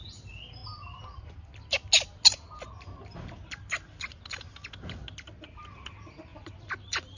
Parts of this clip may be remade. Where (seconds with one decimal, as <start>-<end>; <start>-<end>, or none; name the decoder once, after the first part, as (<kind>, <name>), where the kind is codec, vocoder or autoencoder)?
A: 6.3-7.2 (vocoder, BigVGAN v2)